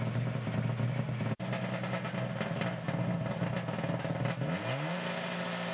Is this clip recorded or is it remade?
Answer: recorded